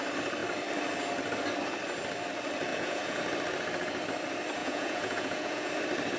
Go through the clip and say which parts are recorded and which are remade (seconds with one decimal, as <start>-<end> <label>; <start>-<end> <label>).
0.0-2.7 recorded; 2.7-3.2 remade; 3.2-4.6 recorded; 4.6-5.7 remade; 5.7-6.2 recorded